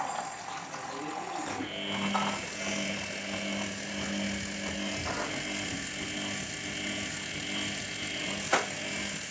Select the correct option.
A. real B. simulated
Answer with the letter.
A